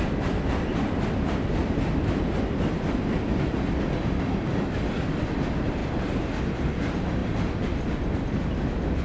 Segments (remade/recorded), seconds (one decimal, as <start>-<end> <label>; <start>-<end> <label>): 0.0-9.0 recorded